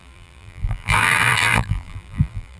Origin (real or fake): fake